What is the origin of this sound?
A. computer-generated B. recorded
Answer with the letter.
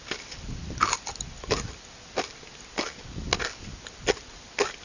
B